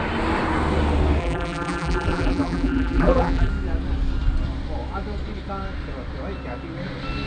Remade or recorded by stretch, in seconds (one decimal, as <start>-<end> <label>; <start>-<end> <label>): 0.0-1.2 recorded; 1.2-3.5 remade; 3.5-7.3 recorded